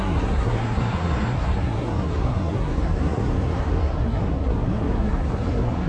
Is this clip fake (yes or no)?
yes